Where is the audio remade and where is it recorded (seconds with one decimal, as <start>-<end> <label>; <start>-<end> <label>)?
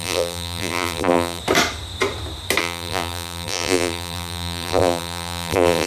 0.0-1.4 remade; 1.4-2.6 recorded; 2.6-5.9 remade